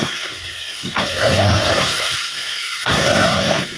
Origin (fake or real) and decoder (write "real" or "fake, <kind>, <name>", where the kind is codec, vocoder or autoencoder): fake, codec, SNAC